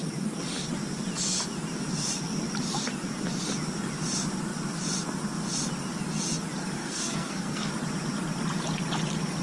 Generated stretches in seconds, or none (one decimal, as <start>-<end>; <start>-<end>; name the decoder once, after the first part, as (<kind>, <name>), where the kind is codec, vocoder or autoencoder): 6.8-7.7 (codec, SNAC)